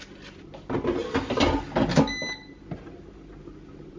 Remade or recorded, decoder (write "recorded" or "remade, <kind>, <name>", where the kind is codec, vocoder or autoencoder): recorded